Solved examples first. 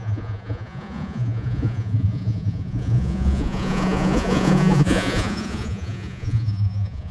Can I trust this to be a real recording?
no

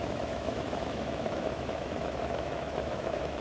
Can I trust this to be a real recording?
no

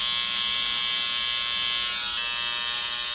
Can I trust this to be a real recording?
yes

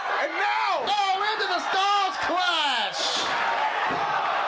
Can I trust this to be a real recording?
yes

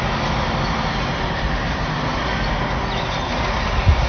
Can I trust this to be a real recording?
yes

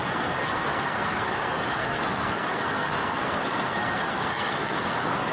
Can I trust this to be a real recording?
no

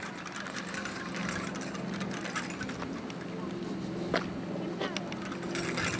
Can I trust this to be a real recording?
yes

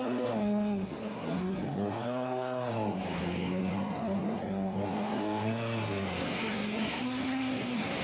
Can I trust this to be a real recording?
no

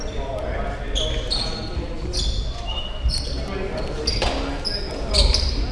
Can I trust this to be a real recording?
yes